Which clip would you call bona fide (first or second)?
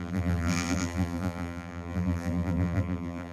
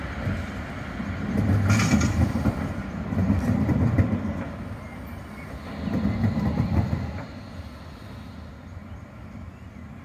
second